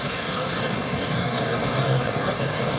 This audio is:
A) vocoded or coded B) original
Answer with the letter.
A